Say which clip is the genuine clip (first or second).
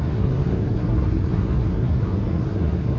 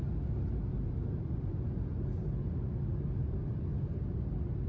second